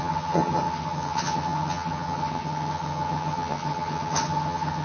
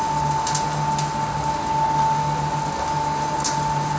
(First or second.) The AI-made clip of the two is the first